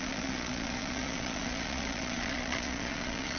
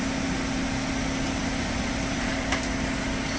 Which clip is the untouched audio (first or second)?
second